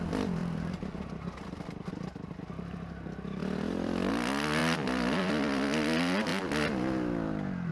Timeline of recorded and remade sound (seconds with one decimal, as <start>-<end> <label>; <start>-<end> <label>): 0.0-3.4 recorded; 3.4-4.1 remade; 4.1-4.6 recorded; 4.6-5.3 remade; 5.3-7.7 recorded